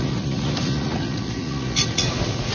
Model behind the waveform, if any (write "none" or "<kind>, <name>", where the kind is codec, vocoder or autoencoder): vocoder, Vocos